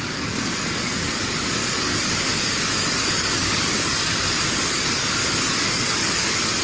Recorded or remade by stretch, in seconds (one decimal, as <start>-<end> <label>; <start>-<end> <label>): 0.0-6.6 remade